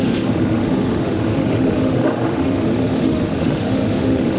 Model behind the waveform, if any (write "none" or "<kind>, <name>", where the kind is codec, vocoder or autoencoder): autoencoder, DAC-VAE